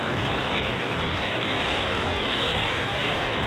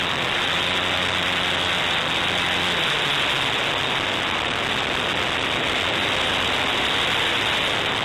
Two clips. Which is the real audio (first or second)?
second